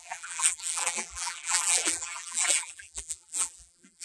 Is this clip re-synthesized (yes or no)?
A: yes